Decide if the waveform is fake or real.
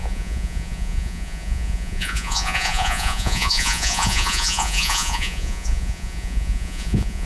fake